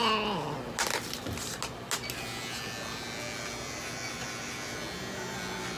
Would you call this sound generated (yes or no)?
no